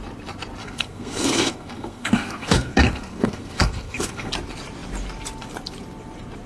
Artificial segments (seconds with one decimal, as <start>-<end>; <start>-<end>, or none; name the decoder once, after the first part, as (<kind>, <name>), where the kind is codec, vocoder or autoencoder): 0.6-4.3 (codec, SNAC)